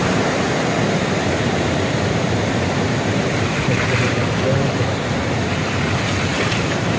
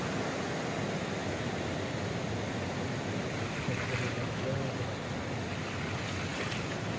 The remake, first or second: first